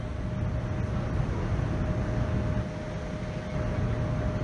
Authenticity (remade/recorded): recorded